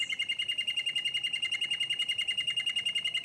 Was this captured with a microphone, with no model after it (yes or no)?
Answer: yes